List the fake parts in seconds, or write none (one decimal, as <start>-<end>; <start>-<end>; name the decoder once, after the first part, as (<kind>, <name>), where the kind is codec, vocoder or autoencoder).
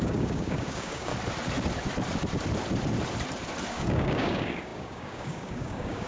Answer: 0.0-1.1 (codec, DAC); 3.7-6.1